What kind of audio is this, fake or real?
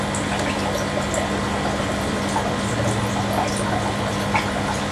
real